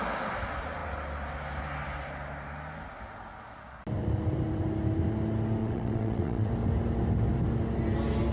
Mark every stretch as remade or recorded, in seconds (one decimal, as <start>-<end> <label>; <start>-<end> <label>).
0.0-5.6 recorded; 5.6-6.5 remade; 6.5-8.3 recorded